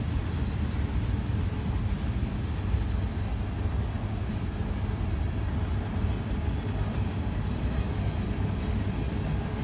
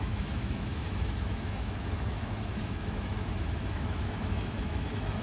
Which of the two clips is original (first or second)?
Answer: first